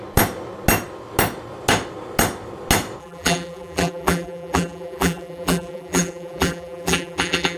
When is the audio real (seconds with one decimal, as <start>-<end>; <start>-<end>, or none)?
0.0-3.0